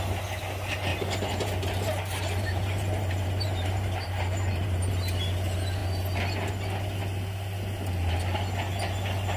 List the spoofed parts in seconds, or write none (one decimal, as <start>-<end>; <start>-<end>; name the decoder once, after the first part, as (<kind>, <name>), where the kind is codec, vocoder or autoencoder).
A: 0.9-4.9 (vocoder, BigVGAN v2)